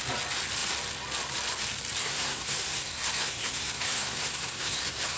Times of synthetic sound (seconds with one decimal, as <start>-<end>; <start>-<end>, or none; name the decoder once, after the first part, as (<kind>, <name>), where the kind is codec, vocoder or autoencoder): 2.0-5.2 (codec, SNAC)